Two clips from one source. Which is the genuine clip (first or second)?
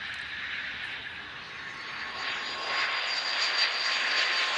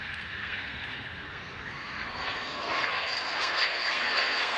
first